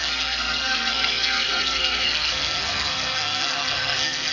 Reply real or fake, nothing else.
fake